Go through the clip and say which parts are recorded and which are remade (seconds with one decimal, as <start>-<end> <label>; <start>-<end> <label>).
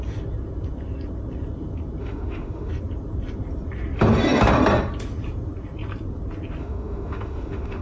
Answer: 0.0-2.0 recorded; 2.0-2.7 remade; 2.7-6.6 recorded; 6.6-7.8 remade